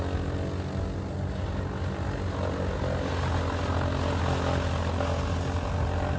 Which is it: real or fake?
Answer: real